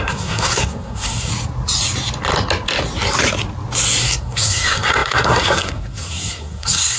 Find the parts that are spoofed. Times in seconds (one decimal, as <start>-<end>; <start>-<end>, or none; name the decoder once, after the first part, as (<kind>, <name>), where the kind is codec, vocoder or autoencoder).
0.0-1.3 (codec, SNAC); 4.0-7.0

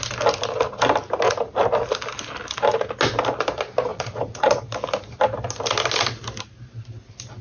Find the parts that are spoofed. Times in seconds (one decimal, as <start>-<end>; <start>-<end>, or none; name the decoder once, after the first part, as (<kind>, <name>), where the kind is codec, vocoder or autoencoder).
3.9-4.7 (vocoder, Vocos)

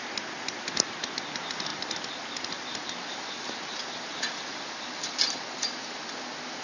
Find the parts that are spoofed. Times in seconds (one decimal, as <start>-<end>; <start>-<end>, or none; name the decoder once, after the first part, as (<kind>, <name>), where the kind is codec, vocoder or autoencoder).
none

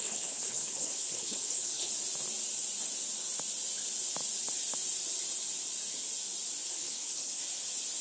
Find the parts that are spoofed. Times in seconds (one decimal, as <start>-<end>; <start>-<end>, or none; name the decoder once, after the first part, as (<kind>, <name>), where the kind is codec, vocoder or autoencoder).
0.0-1.9 (codec, HILCodec); 6.7-7.4

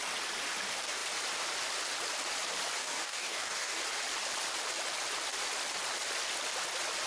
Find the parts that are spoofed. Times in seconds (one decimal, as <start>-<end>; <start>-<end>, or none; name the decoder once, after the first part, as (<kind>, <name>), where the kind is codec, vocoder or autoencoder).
2.8-3.8 (codec, DAC)

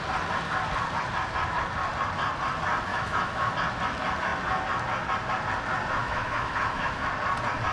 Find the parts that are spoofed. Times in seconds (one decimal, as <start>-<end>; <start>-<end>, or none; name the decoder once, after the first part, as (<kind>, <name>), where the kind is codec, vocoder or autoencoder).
2.9-3.5 (autoencoder, DAC-VAE); 6.0-7.1